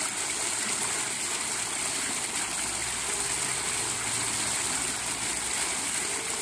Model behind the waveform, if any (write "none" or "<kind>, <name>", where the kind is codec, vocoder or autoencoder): none